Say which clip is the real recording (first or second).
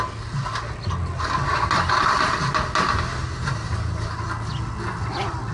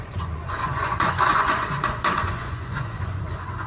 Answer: first